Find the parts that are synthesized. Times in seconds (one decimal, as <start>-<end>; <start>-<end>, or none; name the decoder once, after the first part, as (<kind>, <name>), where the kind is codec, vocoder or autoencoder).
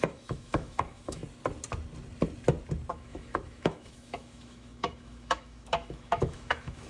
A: 0.0-1.2 (autoencoder, DAC-VAE); 2.9-6.9